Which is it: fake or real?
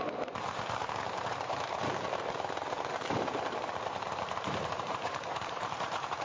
fake